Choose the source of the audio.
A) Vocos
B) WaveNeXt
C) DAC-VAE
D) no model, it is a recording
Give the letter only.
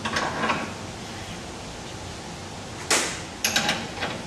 D